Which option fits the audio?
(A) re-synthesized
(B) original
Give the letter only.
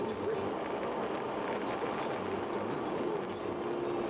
B